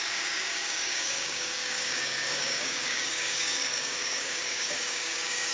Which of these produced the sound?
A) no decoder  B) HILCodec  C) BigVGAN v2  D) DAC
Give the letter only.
D